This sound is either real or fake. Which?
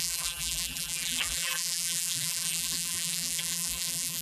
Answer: fake